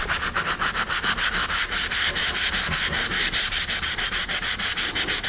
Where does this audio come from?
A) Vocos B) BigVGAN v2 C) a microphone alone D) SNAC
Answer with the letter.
C